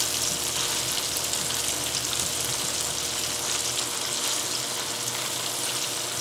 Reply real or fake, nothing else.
real